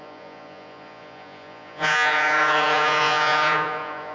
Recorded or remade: remade